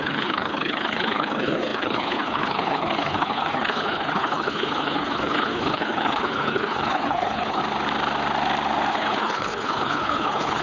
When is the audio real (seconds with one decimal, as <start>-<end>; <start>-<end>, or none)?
7.6-8.9